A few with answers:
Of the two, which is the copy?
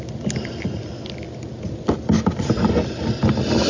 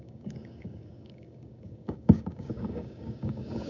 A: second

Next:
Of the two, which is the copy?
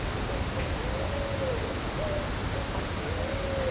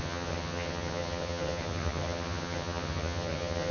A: second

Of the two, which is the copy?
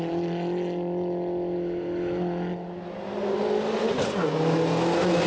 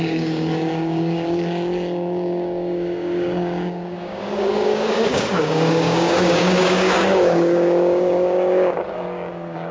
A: second